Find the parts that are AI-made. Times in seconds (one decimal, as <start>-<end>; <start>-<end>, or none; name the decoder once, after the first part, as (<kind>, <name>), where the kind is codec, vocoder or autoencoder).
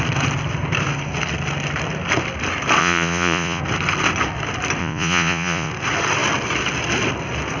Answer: 2.8-3.6 (vocoder, Vocos); 4.8-5.7